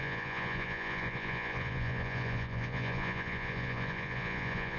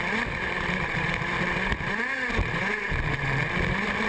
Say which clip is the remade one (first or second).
first